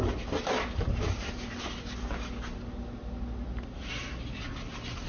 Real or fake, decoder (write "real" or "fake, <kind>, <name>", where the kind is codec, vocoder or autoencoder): real